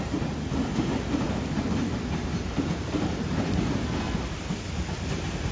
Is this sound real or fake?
real